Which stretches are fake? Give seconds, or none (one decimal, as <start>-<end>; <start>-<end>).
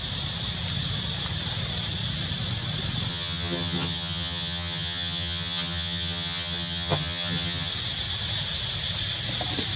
3.1-7.7